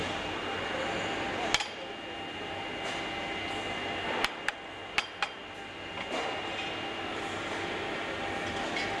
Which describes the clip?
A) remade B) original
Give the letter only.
B